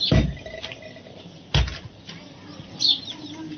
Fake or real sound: real